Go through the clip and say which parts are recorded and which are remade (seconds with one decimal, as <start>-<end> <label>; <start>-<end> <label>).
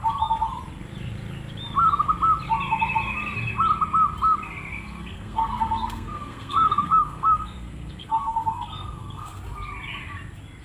0.0-4.7 recorded; 4.7-9.4 remade; 9.4-10.6 recorded